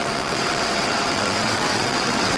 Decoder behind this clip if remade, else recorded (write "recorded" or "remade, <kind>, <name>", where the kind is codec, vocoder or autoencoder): remade, vocoder, WaveNeXt